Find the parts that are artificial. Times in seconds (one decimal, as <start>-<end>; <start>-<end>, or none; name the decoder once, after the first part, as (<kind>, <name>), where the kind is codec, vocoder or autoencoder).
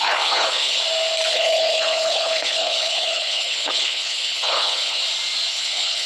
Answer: 0.0-0.8 (codec, HILCodec); 1.3-5.0; 5.5-6.1